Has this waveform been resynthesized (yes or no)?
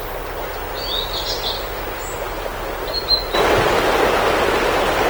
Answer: no